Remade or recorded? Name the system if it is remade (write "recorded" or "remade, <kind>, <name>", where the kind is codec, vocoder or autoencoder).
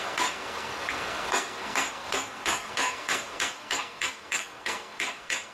remade, codec, SNAC